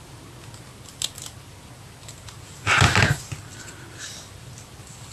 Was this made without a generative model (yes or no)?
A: yes